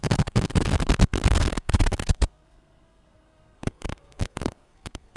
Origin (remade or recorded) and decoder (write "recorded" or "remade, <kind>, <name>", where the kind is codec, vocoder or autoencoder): remade, codec, SNAC